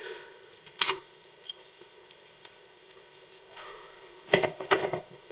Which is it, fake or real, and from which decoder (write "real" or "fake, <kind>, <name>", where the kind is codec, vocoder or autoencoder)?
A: fake, codec, ZipCodec